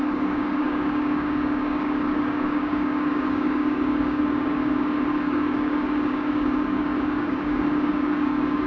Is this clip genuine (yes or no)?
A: no